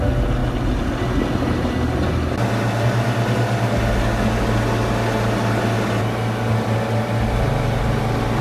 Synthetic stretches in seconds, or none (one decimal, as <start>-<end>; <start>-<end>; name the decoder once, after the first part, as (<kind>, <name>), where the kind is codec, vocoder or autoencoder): none